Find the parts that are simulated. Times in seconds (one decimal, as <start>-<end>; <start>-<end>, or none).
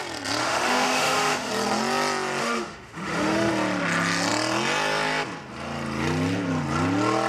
0.4-1.5; 2.4-3.5